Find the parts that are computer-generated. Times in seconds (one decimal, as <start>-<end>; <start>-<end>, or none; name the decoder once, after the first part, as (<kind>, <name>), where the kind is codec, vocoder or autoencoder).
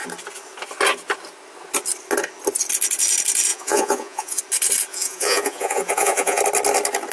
3.5-4.4 (vocoder, Vocos); 4.9-6.4